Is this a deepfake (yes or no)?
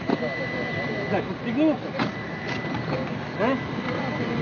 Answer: no